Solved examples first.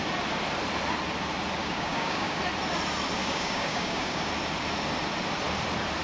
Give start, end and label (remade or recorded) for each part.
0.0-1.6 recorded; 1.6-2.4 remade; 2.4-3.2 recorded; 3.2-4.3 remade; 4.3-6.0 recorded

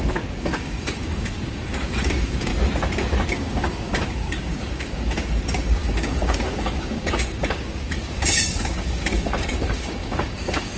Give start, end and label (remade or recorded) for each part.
0.0-2.5 remade; 2.5-3.3 recorded; 3.3-10.8 remade

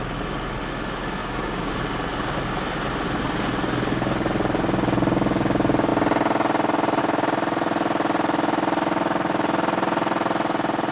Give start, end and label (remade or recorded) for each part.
0.0-1.2 recorded; 1.2-1.7 remade; 1.7-10.9 recorded

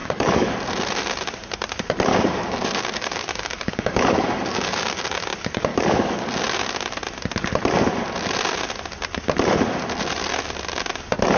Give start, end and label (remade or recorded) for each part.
0.0-0.5 remade; 0.5-2.1 recorded; 2.1-5.0 remade; 5.0-5.7 recorded; 5.7-6.3 remade; 6.3-11.4 recorded